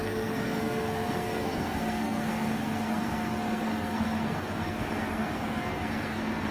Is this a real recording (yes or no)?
no